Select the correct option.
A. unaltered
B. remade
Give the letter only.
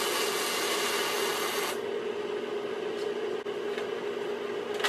A